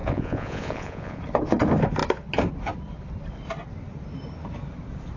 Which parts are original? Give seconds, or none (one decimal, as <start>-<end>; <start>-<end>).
1.2-5.2